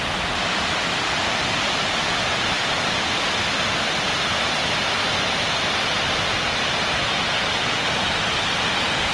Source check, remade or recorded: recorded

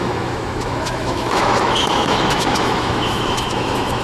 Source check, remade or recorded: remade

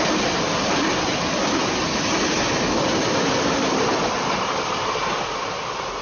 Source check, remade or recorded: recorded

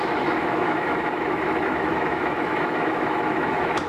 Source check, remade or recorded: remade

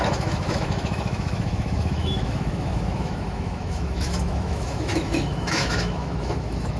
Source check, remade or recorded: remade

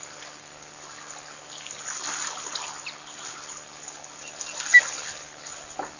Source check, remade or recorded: recorded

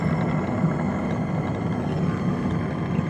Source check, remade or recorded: recorded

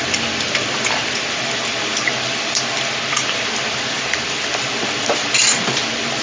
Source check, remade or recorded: recorded